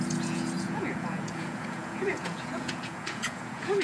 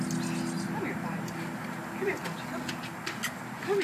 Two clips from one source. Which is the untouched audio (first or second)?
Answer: second